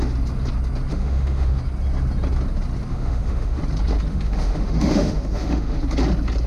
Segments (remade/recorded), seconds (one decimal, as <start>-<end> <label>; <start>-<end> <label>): 0.0-0.9 recorded; 0.9-1.6 remade; 1.6-2.9 recorded; 2.9-3.6 remade; 3.6-4.1 recorded; 4.1-5.8 remade; 5.8-6.5 recorded